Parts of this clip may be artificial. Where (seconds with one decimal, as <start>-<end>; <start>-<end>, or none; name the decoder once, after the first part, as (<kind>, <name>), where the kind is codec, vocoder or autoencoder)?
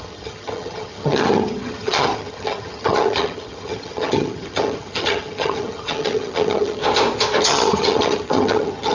0.0-6.8 (vocoder, HiFi-GAN); 7.4-8.9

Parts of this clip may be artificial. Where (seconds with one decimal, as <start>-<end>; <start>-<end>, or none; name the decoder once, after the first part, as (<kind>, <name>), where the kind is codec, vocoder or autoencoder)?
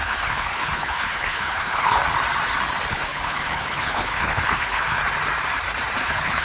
0.0-2.0 (codec, HILCodec); 2.9-5.0; 6.0-6.4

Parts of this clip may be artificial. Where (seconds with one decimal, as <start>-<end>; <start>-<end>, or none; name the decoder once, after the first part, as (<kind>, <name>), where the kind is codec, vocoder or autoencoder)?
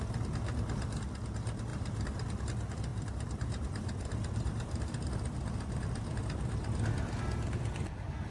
1.7-2.4 (vocoder, BigVGAN v2); 2.9-5.0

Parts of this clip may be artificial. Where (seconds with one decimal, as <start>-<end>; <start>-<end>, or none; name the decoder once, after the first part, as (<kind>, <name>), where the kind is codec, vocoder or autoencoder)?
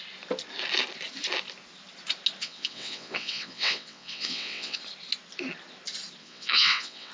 2.4-4.8 (vocoder, WaveNeXt); 6.2-7.1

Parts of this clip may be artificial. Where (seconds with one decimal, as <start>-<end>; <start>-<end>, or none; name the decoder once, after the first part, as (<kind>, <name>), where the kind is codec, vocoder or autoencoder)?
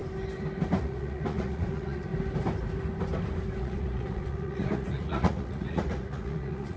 0.8-2.1 (vocoder, Vocos); 3.6-6.8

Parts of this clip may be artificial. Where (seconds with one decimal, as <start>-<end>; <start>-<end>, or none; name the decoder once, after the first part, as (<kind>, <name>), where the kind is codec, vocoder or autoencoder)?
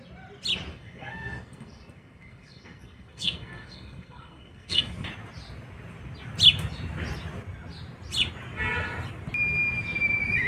0.7-4.9 (codec, SNAC)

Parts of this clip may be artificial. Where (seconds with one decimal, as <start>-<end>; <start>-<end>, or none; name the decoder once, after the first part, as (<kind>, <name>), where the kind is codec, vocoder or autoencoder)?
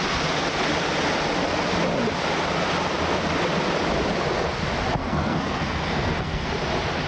5.0-6.5 (codec, SNAC)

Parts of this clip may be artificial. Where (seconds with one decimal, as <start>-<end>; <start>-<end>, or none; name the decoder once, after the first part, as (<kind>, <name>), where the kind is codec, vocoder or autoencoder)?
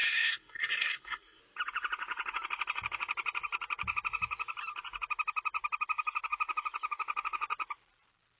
0.0-1.4 (codec, SNAC)